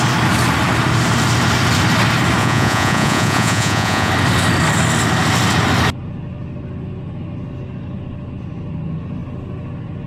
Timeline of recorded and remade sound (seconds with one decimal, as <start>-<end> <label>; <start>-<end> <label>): 0.0-2.4 recorded; 2.4-4.1 remade; 4.1-10.1 recorded